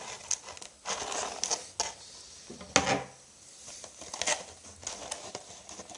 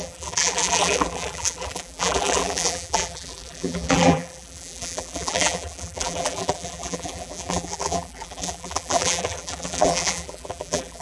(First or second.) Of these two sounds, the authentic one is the first